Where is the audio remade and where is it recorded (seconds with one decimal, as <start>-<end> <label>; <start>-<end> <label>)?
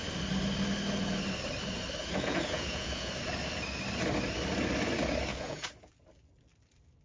0.0-2.0 recorded; 2.0-3.1 remade; 3.1-5.3 recorded; 5.3-5.9 remade; 5.9-7.0 recorded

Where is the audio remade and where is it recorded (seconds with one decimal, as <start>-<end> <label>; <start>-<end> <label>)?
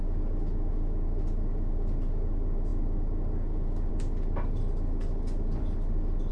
0.0-6.3 recorded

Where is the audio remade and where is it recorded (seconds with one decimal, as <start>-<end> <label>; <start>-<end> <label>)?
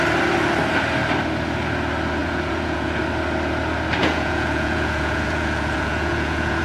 0.0-2.2 recorded; 2.2-3.0 remade; 3.0-4.0 recorded; 4.0-6.6 remade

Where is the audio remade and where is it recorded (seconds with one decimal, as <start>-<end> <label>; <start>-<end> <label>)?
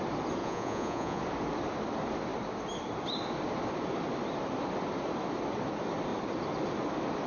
0.0-0.4 recorded; 0.4-1.2 remade; 1.2-7.3 recorded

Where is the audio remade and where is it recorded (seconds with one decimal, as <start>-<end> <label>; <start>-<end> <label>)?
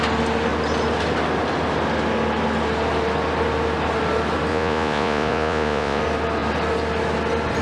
0.0-4.5 recorded; 4.5-6.0 remade; 6.0-7.6 recorded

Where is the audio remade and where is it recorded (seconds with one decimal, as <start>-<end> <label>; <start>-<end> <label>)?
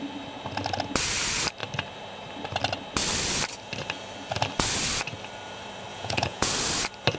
0.0-5.9 recorded; 5.9-6.5 remade; 6.5-7.2 recorded